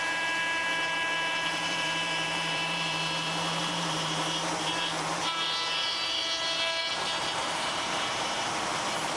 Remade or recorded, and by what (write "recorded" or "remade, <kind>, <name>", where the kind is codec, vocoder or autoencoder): remade, vocoder, BigVGAN v2